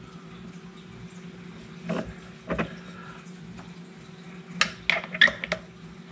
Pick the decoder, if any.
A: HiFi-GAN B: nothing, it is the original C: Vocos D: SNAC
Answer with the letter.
B